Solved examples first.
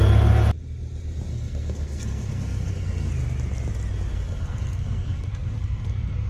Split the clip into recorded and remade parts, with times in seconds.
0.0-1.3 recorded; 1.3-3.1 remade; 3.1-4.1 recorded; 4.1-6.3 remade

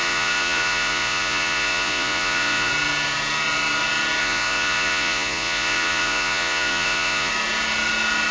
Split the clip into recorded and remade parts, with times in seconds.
0.0-2.7 remade; 2.7-4.2 recorded; 4.2-7.3 remade; 7.3-8.3 recorded

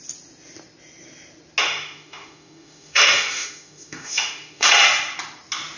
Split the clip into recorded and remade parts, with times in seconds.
0.0-1.6 recorded; 1.6-4.7 remade; 4.7-5.8 recorded

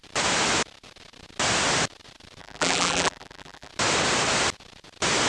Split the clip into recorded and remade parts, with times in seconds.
0.0-2.4 recorded; 2.4-3.7 remade; 3.7-5.3 recorded

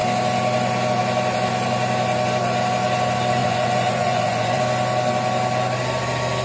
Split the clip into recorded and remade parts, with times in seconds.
0.0-3.4 recorded; 3.4-4.6 remade; 4.6-6.4 recorded

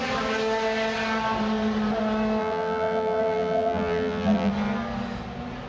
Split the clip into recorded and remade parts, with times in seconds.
0.0-2.4 recorded; 2.4-4.5 remade; 4.5-5.7 recorded

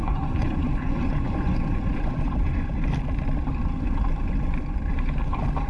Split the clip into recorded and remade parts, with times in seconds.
0.0-2.7 remade; 2.7-5.7 recorded